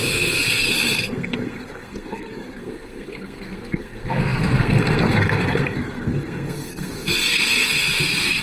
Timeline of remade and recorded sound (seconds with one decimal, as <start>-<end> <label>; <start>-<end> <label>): 0.0-8.4 remade